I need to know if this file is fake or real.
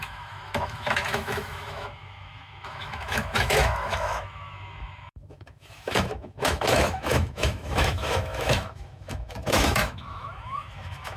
fake